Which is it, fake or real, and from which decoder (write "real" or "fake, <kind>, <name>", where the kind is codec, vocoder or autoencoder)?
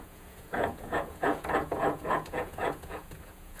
fake, vocoder, Vocos